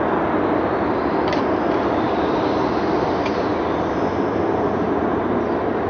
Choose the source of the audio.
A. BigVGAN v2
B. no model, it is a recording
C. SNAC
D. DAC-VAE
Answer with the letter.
B